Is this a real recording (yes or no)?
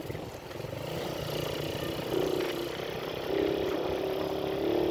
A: yes